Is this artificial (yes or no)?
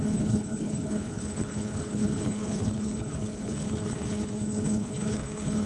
yes